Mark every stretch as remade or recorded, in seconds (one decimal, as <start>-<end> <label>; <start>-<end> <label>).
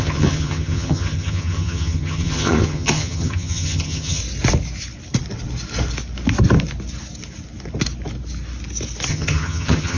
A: 0.0-4.2 remade; 4.2-9.1 recorded; 9.1-10.0 remade